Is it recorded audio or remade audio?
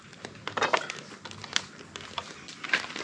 recorded